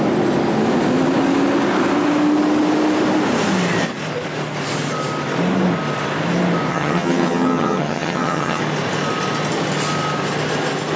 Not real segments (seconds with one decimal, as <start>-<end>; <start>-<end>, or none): 6.7-8.6